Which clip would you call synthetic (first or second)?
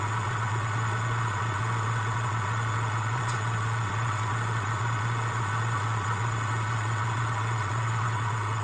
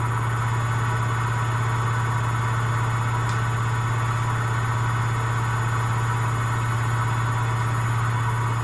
first